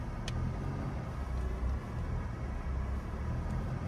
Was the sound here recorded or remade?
recorded